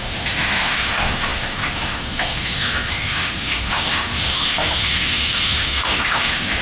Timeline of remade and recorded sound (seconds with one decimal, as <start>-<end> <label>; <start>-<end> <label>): 0.0-6.6 remade